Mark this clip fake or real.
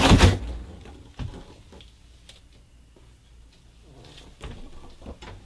real